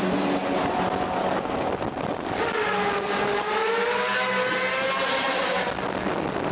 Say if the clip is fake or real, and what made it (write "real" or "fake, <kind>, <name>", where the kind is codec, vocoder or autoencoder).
real